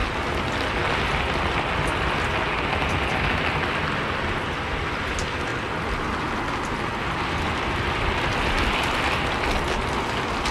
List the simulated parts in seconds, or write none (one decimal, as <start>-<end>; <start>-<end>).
none